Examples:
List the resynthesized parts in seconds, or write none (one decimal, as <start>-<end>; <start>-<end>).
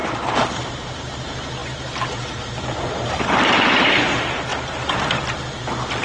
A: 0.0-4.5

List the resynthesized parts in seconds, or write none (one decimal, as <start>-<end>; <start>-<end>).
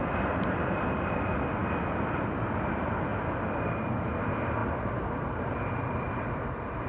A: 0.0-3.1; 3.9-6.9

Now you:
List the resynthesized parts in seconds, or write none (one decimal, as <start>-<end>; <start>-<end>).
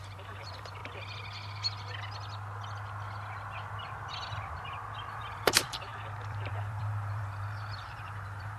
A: 0.0-0.8; 5.1-5.9; 6.5-8.6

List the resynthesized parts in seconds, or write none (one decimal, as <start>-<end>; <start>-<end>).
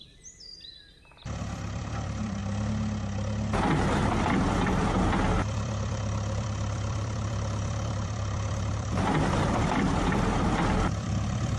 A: 0.0-2.4; 4.2-11.6